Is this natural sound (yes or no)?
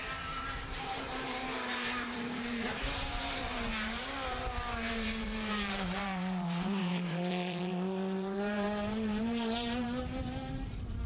no